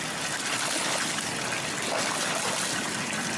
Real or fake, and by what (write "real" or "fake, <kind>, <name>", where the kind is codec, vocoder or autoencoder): real